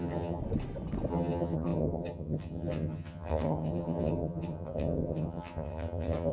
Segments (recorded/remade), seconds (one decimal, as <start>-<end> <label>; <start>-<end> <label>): 0.0-0.4 remade; 0.4-1.1 recorded; 1.1-6.3 remade